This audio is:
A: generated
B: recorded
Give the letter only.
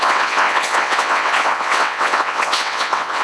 A